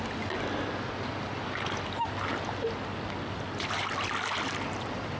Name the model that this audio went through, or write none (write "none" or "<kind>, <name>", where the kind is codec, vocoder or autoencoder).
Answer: none